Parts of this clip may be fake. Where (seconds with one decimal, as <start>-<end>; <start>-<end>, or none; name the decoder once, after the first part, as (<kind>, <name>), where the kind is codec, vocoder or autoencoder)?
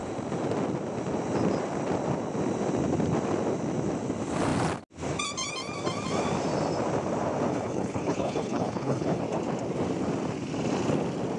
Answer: 7.5-9.2 (codec, HILCodec)